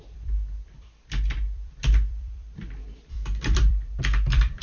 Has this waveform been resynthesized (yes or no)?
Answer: yes